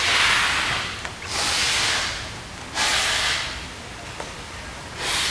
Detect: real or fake real